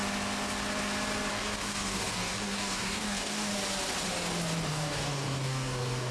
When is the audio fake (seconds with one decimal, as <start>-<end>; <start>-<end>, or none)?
1.3-3.5; 4.7-6.1